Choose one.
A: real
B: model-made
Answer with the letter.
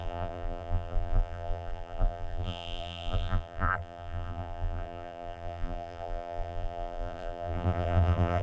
B